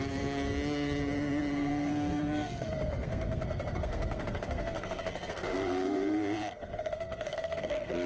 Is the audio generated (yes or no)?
yes